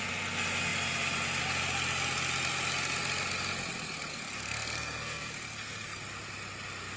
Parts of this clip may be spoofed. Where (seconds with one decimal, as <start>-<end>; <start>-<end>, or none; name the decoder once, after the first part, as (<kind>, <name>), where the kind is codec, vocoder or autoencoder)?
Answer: 4.1-6.0 (codec, SNAC)